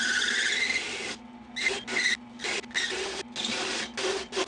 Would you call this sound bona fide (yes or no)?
yes